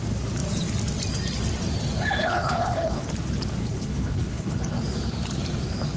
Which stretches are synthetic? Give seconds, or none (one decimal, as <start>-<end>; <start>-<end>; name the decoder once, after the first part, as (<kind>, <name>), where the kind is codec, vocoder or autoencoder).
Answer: 2.2-3.0 (codec, HILCodec); 3.6-4.8